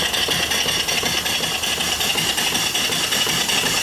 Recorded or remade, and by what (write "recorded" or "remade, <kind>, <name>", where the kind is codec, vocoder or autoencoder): recorded